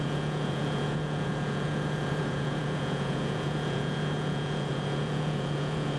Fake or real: fake